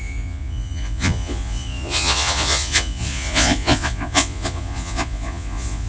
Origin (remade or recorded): remade